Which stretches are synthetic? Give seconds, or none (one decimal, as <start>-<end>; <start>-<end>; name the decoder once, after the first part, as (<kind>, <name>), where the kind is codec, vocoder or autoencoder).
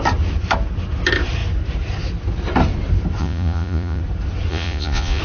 3.2-4.0 (vocoder, Vocos); 4.5-5.2